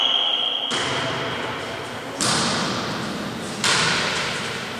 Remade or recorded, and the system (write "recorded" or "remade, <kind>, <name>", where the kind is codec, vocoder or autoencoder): remade, vocoder, BigVGAN v2